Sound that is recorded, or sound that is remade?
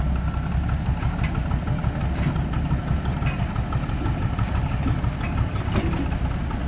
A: recorded